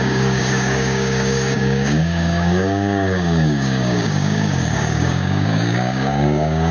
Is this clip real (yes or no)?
no